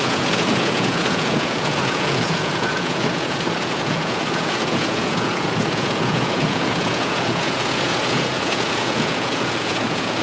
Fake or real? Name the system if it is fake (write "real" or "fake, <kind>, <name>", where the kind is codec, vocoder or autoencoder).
fake, vocoder, Vocos